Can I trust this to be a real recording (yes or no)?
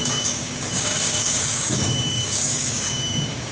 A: no